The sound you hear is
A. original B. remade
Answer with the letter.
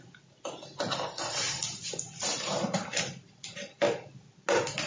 A